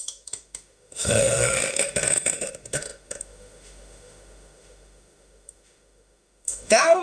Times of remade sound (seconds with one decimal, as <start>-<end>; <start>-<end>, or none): 0.0-7.0